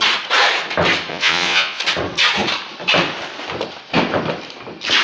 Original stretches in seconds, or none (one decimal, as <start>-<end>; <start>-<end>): 0.0-1.1; 1.8-5.0